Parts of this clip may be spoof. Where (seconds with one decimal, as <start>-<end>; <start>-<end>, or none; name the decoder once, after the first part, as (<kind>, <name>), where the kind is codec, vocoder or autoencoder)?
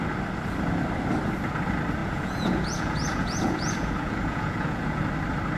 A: 2.0-5.0 (vocoder, Vocos)